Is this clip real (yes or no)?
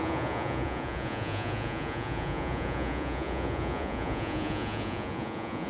no